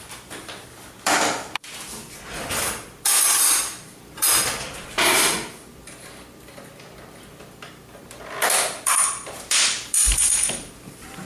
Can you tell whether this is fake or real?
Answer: fake